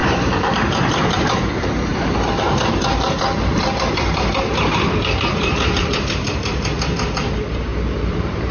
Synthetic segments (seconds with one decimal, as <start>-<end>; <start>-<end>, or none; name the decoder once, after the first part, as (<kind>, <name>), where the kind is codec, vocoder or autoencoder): 0.0-8.5 (vocoder, BigVGAN v2)